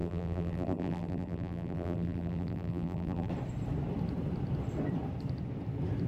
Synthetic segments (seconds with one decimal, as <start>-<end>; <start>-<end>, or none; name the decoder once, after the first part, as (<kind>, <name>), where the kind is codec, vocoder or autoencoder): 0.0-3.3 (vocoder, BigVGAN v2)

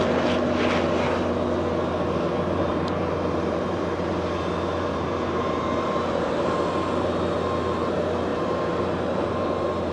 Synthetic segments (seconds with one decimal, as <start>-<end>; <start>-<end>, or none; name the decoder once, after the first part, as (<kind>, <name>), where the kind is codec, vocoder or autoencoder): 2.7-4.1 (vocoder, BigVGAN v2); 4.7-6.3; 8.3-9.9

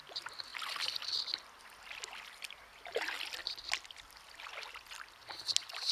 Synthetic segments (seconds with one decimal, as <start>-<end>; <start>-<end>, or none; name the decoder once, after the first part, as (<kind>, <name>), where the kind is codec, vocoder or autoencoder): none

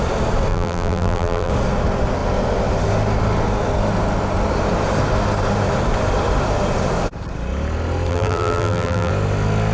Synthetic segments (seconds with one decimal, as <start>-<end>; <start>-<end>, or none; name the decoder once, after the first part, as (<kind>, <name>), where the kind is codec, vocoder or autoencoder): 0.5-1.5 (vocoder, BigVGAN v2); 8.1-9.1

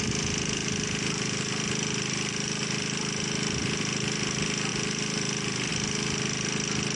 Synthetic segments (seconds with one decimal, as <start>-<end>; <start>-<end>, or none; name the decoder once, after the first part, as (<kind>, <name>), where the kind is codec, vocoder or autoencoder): 0.6-3.8 (vocoder, BigVGAN v2); 4.7-5.7